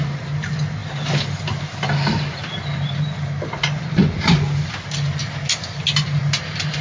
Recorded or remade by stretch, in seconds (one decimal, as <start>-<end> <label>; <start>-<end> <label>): 0.0-6.8 recorded